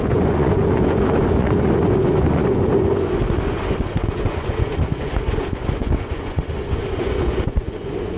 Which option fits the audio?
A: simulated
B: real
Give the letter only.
A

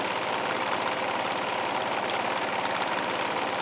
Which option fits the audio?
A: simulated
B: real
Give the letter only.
B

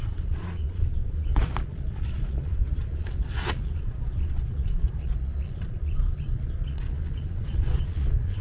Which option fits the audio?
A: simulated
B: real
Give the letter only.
A